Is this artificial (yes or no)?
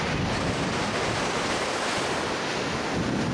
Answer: no